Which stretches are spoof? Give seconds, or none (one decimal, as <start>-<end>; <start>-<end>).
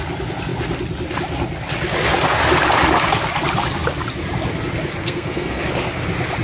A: 5.0-5.6